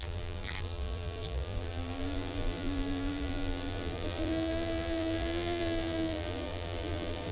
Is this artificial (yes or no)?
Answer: yes